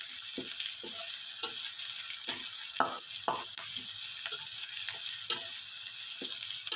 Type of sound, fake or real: real